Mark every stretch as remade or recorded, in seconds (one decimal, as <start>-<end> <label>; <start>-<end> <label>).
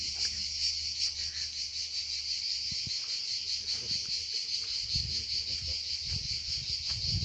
0.0-7.2 recorded